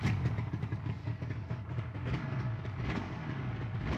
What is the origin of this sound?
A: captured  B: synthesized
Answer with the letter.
B